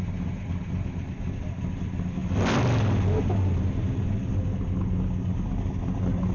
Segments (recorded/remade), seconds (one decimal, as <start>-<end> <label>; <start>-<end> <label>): 0.0-6.3 recorded